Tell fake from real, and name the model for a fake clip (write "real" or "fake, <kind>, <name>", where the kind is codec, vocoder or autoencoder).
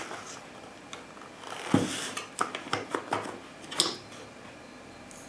real